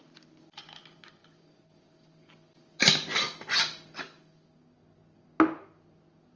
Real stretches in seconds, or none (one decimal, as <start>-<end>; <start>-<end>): 0.0-6.4

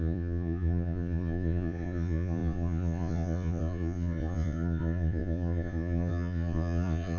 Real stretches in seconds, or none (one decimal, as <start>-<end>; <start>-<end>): none